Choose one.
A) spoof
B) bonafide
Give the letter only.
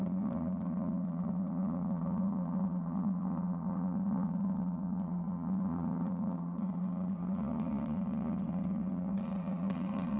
A